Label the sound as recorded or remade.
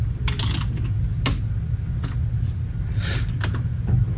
recorded